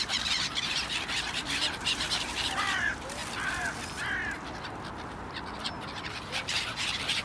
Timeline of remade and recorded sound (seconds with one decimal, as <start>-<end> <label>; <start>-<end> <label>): 0.0-3.2 remade; 3.2-6.2 recorded; 6.2-7.2 remade